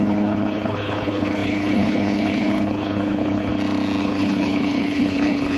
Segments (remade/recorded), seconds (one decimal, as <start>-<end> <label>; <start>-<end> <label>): 0.0-3.5 remade; 3.5-4.0 recorded; 4.0-5.6 remade